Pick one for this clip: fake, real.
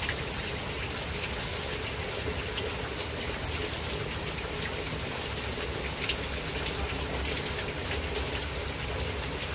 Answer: real